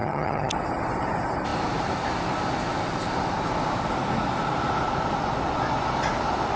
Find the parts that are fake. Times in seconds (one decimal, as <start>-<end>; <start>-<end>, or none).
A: 0.0-0.5